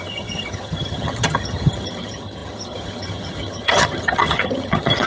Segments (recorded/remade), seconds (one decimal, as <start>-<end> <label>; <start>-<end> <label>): 0.0-5.1 remade